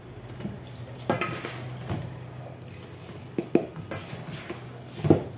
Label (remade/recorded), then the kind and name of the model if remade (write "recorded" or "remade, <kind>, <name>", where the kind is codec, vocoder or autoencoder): recorded